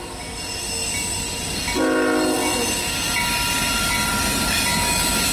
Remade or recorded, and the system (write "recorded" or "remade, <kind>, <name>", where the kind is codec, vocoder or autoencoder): recorded